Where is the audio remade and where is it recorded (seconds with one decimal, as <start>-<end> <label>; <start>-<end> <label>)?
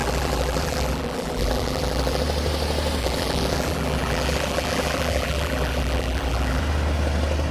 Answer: 0.0-2.2 remade; 2.2-3.0 recorded; 3.0-6.6 remade; 6.6-7.5 recorded